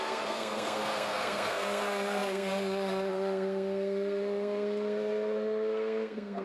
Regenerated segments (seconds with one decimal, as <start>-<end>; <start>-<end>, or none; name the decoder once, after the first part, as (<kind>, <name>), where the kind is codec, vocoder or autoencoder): 0.0-6.4 (codec, SNAC)